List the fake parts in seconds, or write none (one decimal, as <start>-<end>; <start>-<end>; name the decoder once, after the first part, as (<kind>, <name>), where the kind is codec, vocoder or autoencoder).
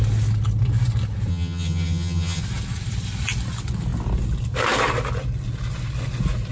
1.3-2.4 (vocoder, HiFi-GAN)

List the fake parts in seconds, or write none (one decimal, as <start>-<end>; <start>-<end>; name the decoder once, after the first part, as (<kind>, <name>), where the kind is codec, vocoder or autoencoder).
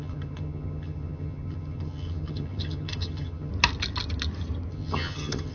0.0-3.5 (vocoder, HiFi-GAN); 4.7-5.5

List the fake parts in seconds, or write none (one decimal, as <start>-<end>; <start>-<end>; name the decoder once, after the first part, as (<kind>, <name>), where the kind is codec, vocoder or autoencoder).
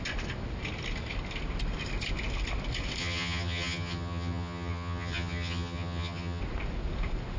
3.0-6.4 (vocoder, HiFi-GAN)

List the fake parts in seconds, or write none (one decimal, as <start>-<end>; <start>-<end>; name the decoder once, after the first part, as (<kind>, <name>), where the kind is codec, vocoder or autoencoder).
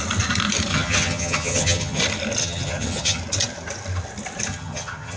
0.7-2.0 (vocoder, HiFi-GAN); 2.4-3.2; 4.5-5.2